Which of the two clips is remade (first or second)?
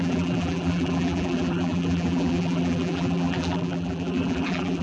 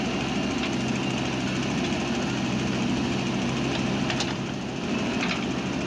first